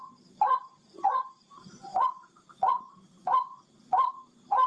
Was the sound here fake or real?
fake